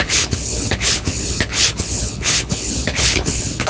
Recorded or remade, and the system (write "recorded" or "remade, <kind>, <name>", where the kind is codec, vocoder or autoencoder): remade, codec, HILCodec